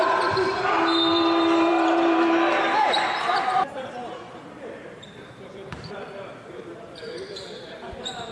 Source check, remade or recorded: remade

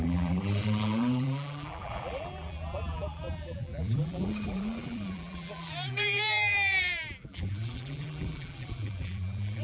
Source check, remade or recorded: remade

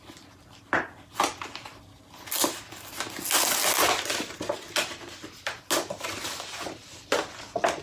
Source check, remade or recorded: recorded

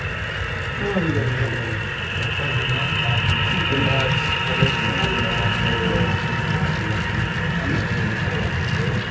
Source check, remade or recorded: recorded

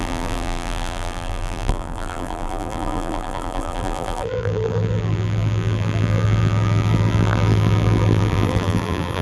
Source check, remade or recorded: remade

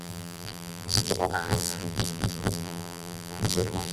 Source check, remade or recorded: remade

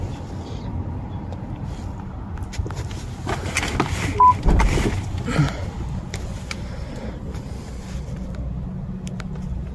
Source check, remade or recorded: recorded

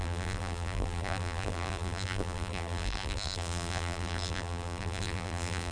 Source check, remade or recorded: remade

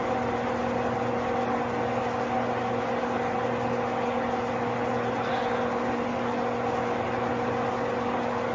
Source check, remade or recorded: recorded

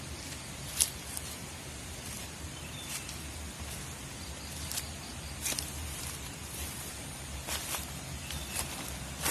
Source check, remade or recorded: remade